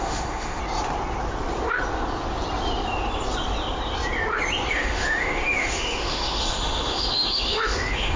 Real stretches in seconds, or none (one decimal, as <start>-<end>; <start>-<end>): 0.6-4.7